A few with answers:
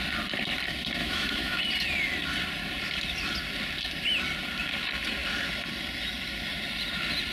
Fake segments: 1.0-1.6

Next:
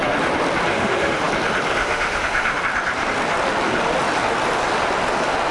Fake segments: 0.7-1.3; 1.8-2.6

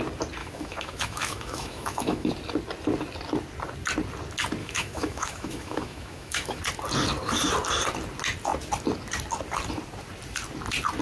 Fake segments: 0.4-2.3; 4.6-6.6

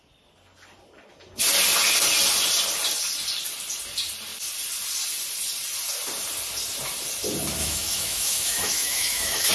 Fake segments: 7.6-9.5

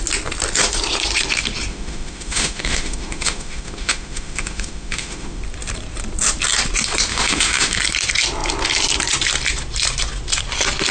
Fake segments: 1.7-5.4; 7.1-7.8

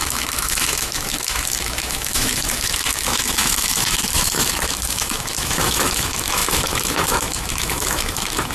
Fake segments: 0.0-8.5

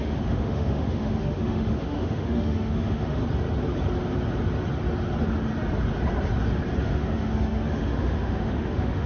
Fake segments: 0.0-3.2; 6.8-9.1

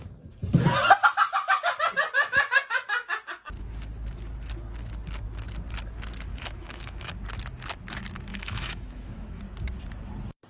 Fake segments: 6.3-7.1; 8.3-9.4